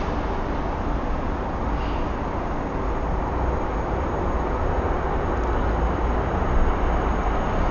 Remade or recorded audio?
recorded